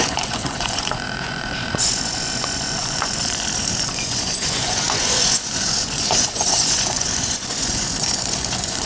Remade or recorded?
remade